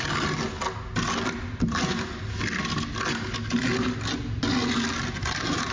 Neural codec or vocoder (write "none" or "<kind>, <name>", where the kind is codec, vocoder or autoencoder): none